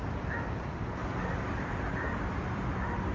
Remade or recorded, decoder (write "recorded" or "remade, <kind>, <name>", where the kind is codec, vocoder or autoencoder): recorded